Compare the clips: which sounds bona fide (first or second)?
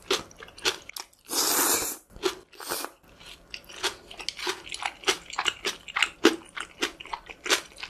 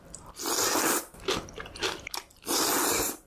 first